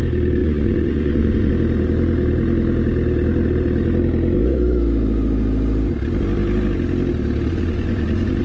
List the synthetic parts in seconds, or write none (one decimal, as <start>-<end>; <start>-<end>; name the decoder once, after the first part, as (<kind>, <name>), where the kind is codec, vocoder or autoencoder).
0.4-1.5 (vocoder, Vocos); 7.5-8.4